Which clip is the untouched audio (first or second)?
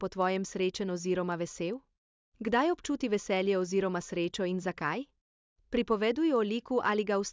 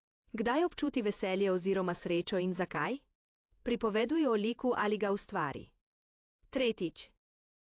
first